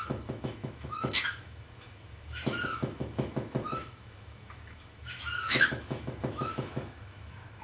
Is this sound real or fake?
fake